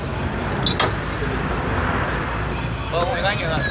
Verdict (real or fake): real